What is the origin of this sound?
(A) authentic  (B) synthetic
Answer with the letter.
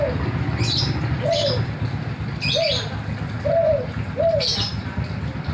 A